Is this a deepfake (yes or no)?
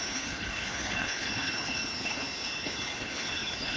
yes